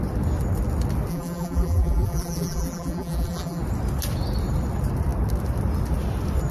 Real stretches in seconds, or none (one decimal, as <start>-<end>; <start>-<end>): 0.0-1.1; 3.6-6.5

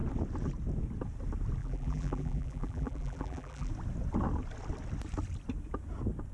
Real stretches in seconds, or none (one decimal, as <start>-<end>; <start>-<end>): 0.0-1.6; 3.7-6.3

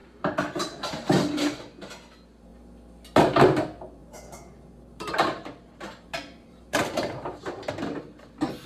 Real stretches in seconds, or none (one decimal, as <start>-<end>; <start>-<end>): 0.8-4.0; 5.1-6.1; 7.7-8.7